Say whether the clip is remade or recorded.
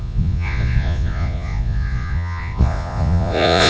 remade